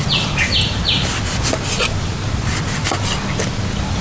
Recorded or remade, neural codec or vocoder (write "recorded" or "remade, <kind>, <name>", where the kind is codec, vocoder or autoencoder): recorded